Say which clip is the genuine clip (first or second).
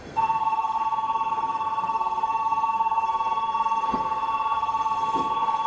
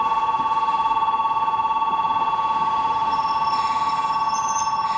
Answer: second